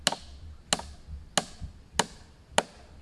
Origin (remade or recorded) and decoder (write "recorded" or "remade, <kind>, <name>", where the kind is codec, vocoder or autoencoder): recorded